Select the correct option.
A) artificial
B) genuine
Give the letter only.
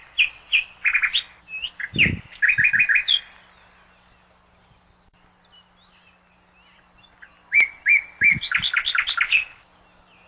B